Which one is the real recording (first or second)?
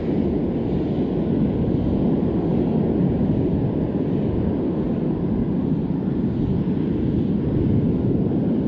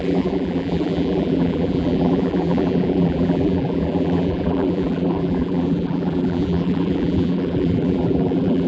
first